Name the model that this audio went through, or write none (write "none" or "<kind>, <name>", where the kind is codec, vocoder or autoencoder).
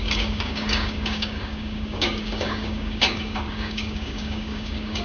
codec, DAC